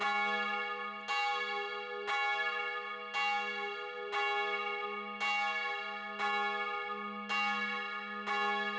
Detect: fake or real real